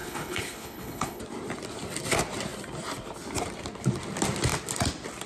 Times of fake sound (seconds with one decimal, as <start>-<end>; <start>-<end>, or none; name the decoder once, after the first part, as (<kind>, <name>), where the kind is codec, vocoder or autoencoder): 0.0-1.2 (codec, HILCodec)